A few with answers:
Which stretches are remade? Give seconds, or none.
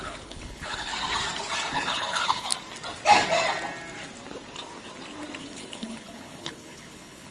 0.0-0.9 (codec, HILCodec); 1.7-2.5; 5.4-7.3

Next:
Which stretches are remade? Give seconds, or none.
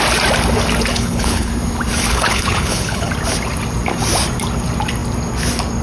0.9-1.5 (codec, HILCodec); 2.1-3.1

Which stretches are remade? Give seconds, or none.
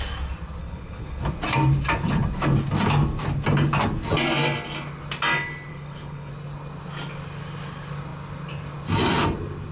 0.6-1.2 (codec, HILCodec); 5.7-6.3